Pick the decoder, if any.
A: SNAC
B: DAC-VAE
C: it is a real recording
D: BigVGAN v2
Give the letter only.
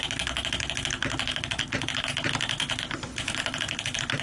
C